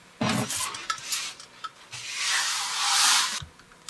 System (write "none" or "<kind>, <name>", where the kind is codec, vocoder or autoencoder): none